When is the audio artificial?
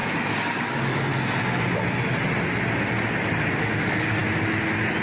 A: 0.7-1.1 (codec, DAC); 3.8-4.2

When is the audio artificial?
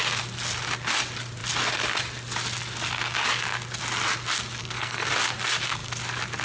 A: 4.6-5.1 (codec, SNAC)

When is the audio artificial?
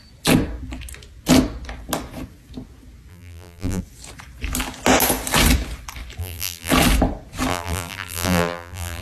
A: 3.1-3.8 (vocoder, BigVGAN v2); 6.2-6.7; 7.5-9.0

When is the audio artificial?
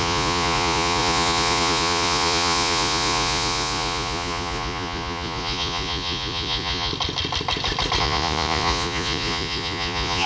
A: 0.0-6.9 (vocoder, Vocos); 8.0-10.3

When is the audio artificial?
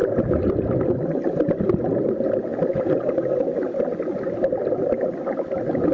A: none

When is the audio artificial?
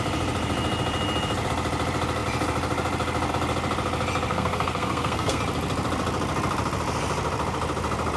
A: 4.3-5.4 (codec, SNAC)